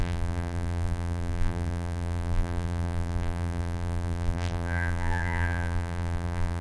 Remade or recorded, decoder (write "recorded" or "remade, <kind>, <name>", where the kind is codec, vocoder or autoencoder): remade, vocoder, BigVGAN v2